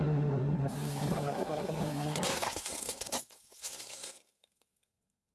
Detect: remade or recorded remade